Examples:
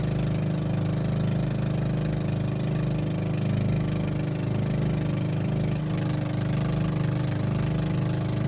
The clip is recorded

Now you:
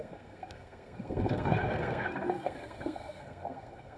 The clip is remade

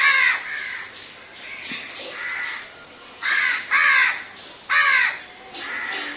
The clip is recorded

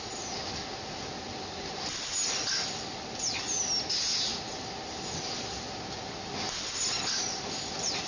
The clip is recorded